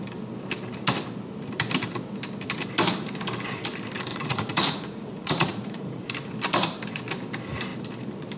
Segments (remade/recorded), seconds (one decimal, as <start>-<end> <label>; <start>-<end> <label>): 0.0-4.1 recorded; 4.1-6.1 remade; 6.1-8.4 recorded